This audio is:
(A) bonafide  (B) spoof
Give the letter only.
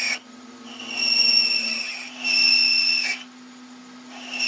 A